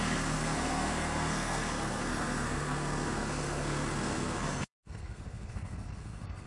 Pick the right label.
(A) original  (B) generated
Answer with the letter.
B